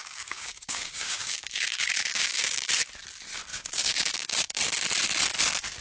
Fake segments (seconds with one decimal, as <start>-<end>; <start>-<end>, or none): 0.0-2.7; 3.5-4.6